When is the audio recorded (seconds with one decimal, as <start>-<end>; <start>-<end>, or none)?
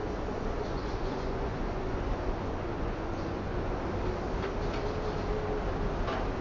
3.8-6.4